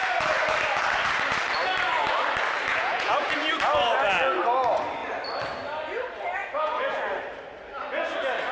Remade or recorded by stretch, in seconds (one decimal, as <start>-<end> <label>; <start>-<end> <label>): 0.0-2.7 recorded; 2.7-3.3 remade; 3.3-6.4 recorded; 6.4-7.0 remade; 7.0-8.5 recorded